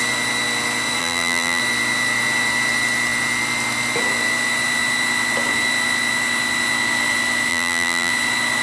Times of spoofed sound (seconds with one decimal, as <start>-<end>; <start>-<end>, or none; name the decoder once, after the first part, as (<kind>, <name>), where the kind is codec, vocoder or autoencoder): 1.0-1.6 (vocoder, BigVGAN v2); 7.5-8.1